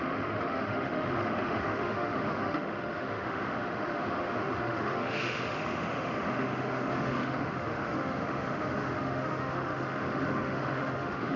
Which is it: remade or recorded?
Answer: remade